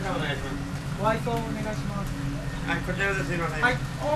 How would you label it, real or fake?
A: real